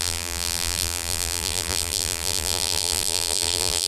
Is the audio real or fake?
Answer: fake